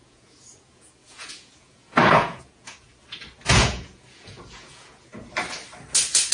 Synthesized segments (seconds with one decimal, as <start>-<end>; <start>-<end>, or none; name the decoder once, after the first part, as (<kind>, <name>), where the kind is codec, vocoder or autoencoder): 0.0-2.9 (vocoder, Vocos); 3.5-5.1